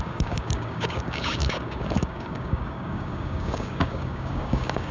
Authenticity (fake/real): fake